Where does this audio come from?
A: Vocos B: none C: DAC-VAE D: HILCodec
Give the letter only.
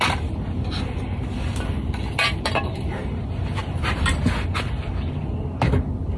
B